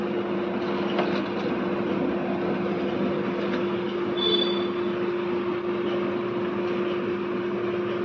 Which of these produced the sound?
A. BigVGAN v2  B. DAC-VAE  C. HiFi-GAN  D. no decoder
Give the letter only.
D